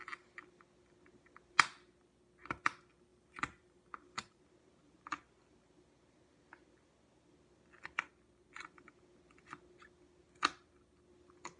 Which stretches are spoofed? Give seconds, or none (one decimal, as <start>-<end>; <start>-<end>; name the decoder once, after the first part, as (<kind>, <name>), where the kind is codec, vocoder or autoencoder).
3.1-4.4 (vocoder, BigVGAN v2)